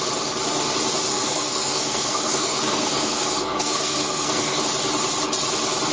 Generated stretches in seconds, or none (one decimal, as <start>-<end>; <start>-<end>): 1.1-4.6